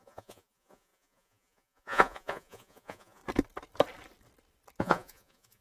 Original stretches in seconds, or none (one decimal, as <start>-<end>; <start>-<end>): 3.2-4.8